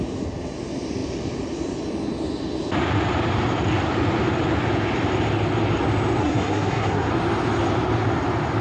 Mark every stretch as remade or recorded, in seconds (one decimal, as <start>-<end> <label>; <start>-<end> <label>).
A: 0.0-6.2 recorded; 6.2-7.1 remade; 7.1-8.6 recorded